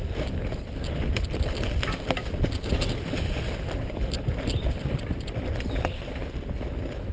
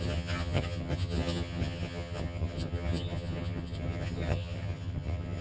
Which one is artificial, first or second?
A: second